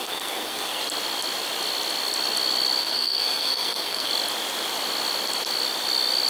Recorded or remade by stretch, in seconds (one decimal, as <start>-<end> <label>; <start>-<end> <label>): 0.0-0.8 remade; 0.8-2.8 recorded; 2.8-4.1 remade; 4.1-6.3 recorded